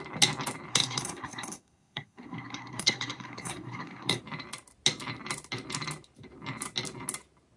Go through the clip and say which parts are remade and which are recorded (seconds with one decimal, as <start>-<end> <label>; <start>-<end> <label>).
0.0-0.7 recorded; 0.7-4.2 remade; 4.2-7.6 recorded